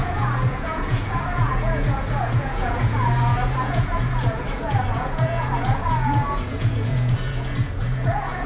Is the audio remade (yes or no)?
yes